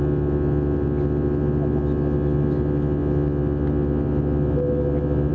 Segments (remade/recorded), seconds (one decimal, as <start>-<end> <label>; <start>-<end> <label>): 0.0-5.3 recorded

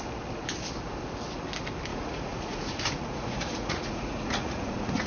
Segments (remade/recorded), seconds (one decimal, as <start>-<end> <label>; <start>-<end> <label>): 0.0-1.9 recorded; 1.9-5.1 remade

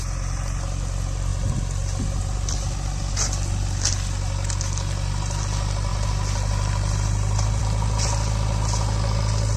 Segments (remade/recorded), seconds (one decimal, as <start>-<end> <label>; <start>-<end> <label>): 0.0-9.6 recorded

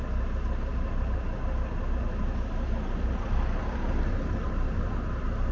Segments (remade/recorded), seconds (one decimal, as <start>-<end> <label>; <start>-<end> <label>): 0.0-5.5 recorded

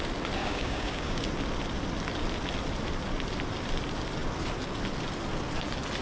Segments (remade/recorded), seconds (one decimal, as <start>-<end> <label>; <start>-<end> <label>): 0.0-0.4 recorded; 0.4-1.2 remade; 1.2-6.0 recorded

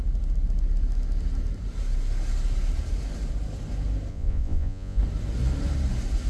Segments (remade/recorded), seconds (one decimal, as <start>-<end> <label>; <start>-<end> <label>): 0.0-4.1 recorded; 4.1-5.0 remade; 5.0-6.3 recorded